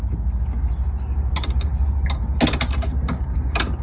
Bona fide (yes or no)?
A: yes